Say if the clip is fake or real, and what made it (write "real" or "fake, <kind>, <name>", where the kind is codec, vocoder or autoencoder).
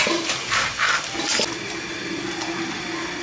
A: real